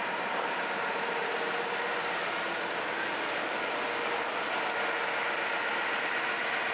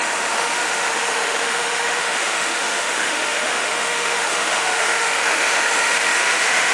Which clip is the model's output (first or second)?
second